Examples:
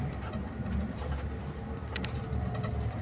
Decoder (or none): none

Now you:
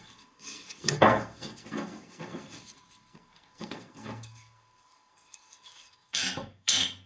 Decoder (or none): codec, SNAC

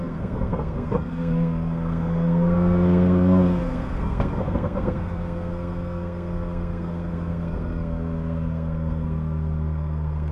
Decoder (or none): codec, SNAC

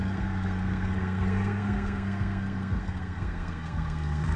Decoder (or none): codec, SNAC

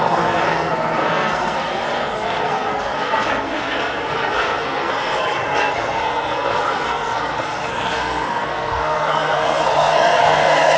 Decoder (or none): codec, SNAC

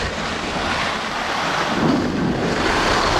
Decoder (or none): none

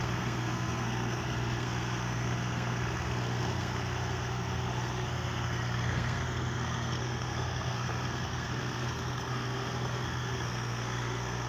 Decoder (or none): codec, SNAC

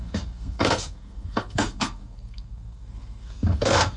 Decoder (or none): codec, SNAC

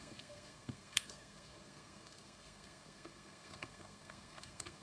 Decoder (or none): codec, SNAC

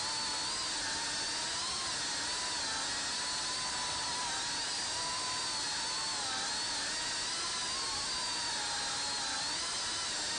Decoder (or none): none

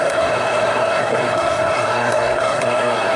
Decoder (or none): codec, SNAC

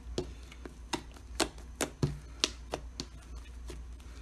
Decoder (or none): none